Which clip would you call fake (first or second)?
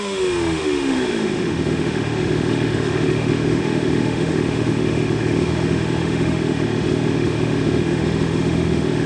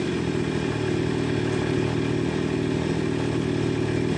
first